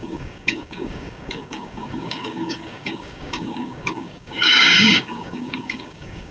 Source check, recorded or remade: remade